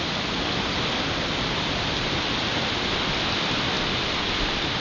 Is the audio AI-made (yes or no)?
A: no